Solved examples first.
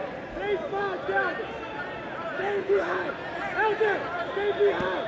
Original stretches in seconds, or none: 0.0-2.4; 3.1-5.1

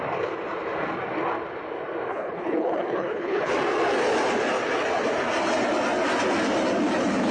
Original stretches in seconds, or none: 0.0-2.1; 3.5-7.3

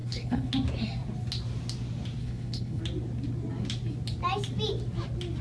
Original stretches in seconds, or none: 0.5-2.2; 2.8-5.4